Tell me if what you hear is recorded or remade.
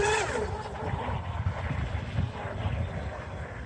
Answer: remade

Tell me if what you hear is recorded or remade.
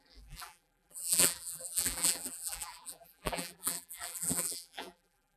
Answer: remade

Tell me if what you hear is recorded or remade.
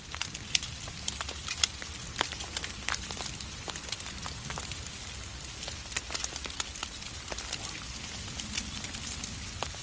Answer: recorded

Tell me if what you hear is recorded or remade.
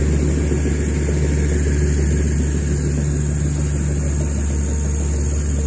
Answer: recorded